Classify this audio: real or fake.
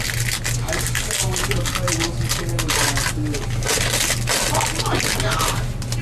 real